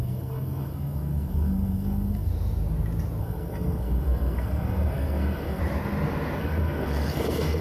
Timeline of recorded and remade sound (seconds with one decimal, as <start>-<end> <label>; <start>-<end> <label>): 0.0-2.3 remade; 2.3-3.2 recorded; 3.2-5.6 remade; 5.6-6.4 recorded; 6.4-7.6 remade